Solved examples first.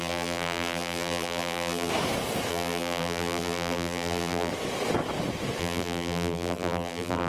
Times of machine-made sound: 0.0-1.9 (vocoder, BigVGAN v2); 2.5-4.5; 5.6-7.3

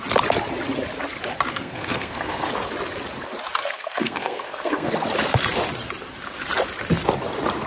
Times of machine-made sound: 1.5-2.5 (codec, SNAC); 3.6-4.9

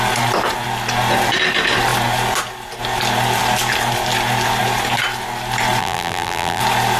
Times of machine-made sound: 5.8-6.6 (vocoder, BigVGAN v2)

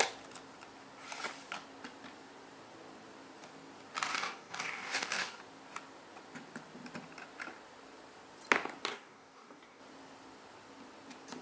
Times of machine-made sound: 4.1-5.4 (codec, DAC); 8.9-9.8

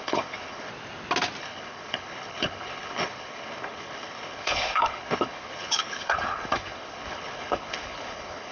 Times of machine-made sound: 0.0-0.7 (codec, HILCodec); 1.4-8.5

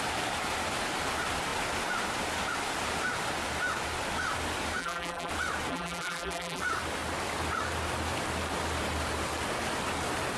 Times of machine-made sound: 4.8-5.3 (vocoder, BigVGAN v2); 5.7-6.6